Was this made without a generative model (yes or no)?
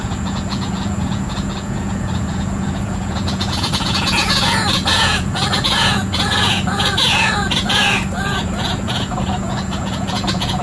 no